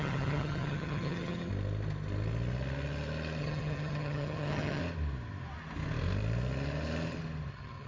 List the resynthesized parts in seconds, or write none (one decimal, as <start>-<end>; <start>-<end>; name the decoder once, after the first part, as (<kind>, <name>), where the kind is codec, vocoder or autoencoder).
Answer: 0.0-1.5 (vocoder, HiFi-GAN); 3.4-4.8; 7.5-7.9